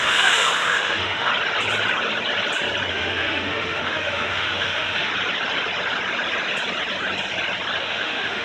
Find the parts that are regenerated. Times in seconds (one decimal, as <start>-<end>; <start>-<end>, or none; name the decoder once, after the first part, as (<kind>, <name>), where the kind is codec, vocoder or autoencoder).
0.0-1.3 (autoencoder, DAC-VAE); 2.9-5.1; 7.8-8.4